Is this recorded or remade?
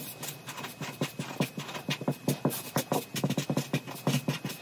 recorded